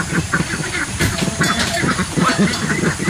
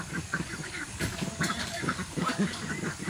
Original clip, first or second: first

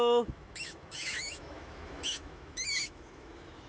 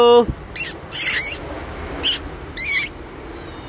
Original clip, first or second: second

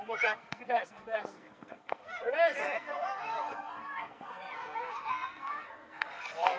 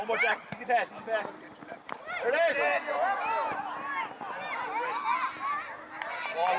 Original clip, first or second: second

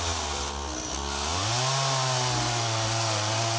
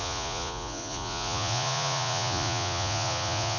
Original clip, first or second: first